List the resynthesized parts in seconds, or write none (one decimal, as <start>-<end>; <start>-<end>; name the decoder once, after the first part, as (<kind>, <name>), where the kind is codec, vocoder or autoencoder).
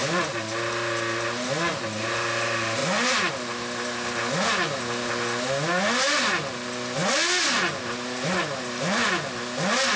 none